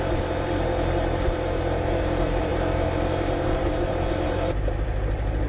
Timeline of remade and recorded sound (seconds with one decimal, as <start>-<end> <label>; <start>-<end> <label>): 0.0-5.5 remade

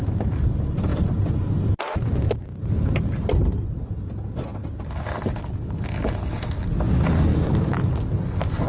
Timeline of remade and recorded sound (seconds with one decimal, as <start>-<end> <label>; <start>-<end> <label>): 0.0-7.3 recorded; 7.3-7.9 remade; 7.9-8.7 recorded

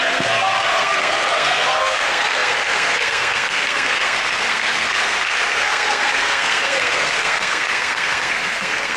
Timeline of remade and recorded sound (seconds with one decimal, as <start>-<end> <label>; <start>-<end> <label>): 0.0-9.0 remade

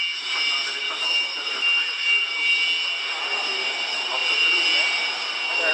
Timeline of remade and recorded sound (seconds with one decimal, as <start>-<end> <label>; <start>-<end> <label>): 0.0-5.7 recorded